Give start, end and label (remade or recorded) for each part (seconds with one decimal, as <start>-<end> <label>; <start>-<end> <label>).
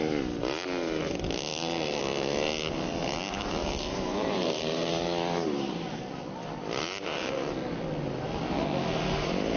0.0-1.5 recorded; 1.5-2.0 remade; 2.0-3.6 recorded; 3.6-6.2 remade; 6.2-9.6 recorded